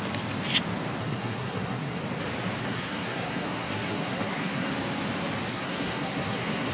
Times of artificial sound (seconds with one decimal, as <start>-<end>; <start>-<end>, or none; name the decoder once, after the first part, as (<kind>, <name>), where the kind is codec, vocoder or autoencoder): 1.0-2.0 (codec, SNAC); 2.6-4.7; 5.5-6.7